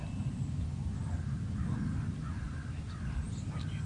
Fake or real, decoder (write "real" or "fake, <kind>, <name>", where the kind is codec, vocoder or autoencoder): real